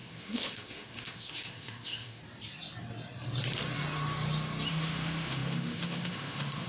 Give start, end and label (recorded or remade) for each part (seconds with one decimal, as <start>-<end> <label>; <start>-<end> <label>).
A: 0.0-2.2 remade; 2.2-4.7 recorded; 4.7-6.7 remade